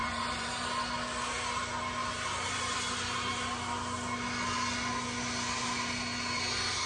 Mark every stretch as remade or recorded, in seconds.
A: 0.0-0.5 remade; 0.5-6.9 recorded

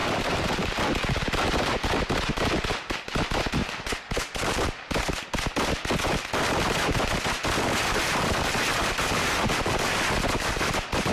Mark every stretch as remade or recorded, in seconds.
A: 0.0-0.8 remade; 0.8-3.6 recorded; 3.6-4.6 remade; 4.6-11.1 recorded

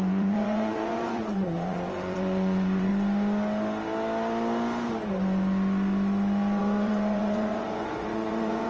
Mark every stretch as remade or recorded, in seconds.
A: 0.0-2.9 remade; 2.9-6.6 recorded; 6.6-8.7 remade

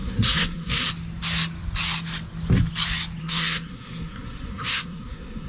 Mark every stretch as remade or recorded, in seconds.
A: 0.0-0.9 remade; 0.9-3.2 recorded; 3.2-5.5 remade